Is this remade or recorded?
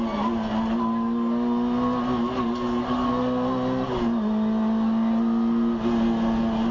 recorded